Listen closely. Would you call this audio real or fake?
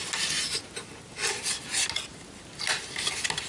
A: real